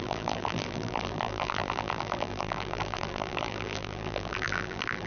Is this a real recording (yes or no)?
no